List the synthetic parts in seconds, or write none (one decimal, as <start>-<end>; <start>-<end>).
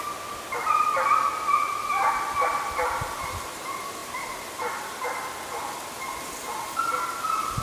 none